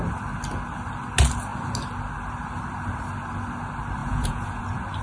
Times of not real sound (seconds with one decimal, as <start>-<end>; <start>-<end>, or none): 4.0-4.6